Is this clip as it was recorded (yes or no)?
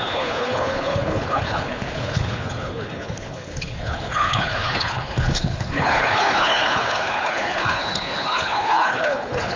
no